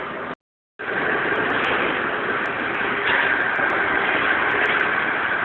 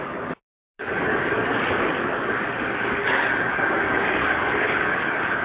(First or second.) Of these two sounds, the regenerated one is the second